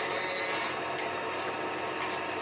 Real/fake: real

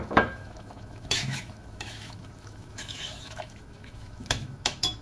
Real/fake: fake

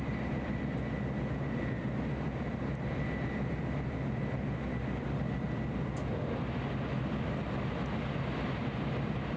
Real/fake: real